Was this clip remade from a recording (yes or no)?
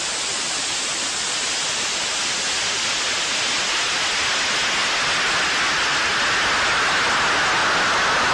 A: no